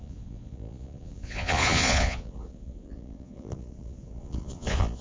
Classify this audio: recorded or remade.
remade